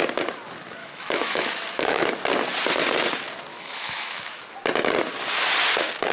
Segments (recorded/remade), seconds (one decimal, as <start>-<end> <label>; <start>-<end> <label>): 0.0-0.8 recorded; 0.8-2.1 remade; 2.1-3.5 recorded; 3.5-4.4 remade; 4.4-6.1 recorded